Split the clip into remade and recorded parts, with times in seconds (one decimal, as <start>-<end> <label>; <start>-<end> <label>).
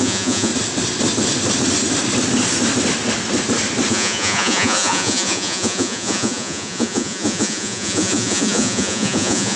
0.0-0.5 remade; 0.5-3.9 recorded; 3.9-9.6 remade